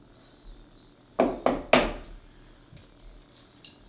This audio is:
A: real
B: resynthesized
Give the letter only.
A